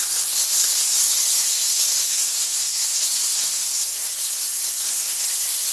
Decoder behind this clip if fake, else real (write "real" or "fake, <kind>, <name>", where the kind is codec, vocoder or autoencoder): fake, codec, SNAC